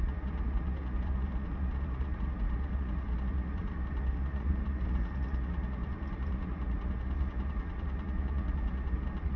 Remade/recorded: remade